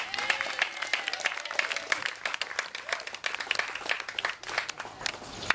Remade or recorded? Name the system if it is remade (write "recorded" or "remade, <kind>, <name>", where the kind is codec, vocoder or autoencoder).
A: recorded